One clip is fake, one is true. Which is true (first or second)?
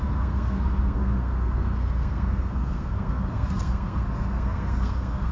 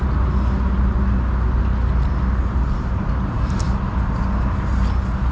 second